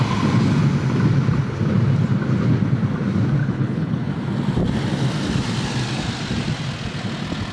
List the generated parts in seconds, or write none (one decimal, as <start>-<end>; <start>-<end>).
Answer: 3.4-4.1

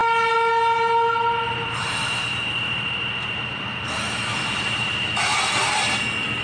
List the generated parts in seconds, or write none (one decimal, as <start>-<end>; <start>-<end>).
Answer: none

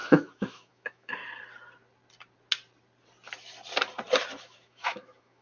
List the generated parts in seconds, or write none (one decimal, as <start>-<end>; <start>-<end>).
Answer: 0.0-1.2; 4.4-5.4

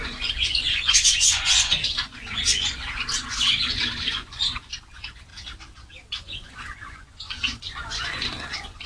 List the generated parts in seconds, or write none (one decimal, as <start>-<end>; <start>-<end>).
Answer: 0.0-5.3; 5.9-8.9

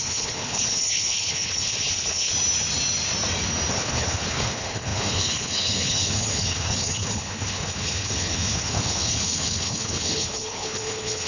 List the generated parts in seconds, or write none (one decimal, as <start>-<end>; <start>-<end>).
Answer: 0.0-2.3; 3.7-11.3

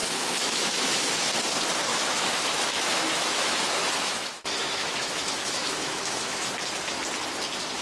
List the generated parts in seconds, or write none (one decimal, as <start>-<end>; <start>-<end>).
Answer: 0.0-1.3; 1.9-6.5

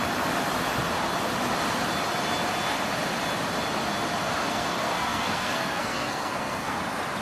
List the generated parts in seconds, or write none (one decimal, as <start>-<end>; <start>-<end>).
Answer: 4.5-6.8